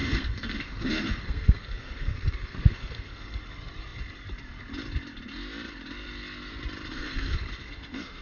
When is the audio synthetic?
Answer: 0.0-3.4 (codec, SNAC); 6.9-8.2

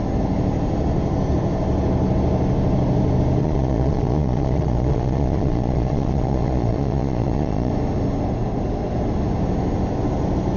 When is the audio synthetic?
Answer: 3.4-7.7 (vocoder, Vocos)